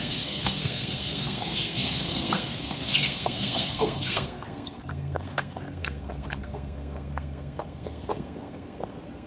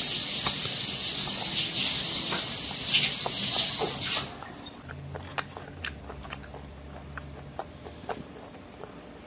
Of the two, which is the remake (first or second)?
first